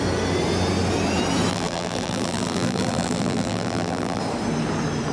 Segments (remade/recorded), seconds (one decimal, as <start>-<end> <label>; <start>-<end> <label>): 0.0-1.5 recorded; 1.5-4.2 remade; 4.2-5.1 recorded